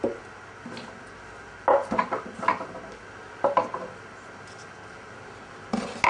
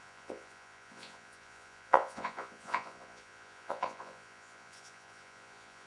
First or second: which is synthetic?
second